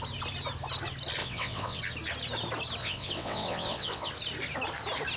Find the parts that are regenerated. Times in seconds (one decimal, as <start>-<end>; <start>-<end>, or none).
1.2-1.8; 2.8-4.1